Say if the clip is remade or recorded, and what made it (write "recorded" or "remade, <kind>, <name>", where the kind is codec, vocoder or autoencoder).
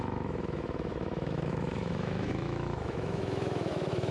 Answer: remade, autoencoder, DAC-VAE